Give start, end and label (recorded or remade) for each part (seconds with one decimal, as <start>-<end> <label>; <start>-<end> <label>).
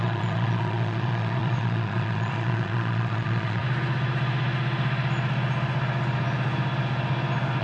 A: 0.0-3.6 remade; 3.6-7.6 recorded